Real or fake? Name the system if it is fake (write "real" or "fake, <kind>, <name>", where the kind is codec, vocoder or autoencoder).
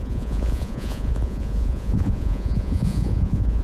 fake, vocoder, Vocos